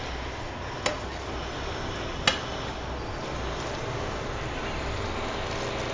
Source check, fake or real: real